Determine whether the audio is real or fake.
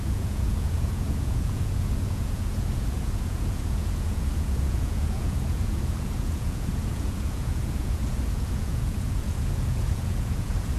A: fake